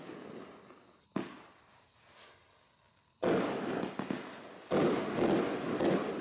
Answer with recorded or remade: recorded